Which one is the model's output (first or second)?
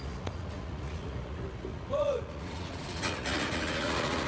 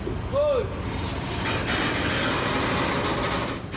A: first